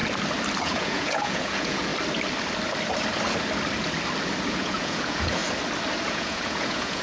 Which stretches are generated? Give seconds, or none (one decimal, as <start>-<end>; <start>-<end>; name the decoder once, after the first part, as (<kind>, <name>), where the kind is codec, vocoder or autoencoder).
0.6-1.9 (vocoder, Vocos); 4.5-5.4; 6.1-7.0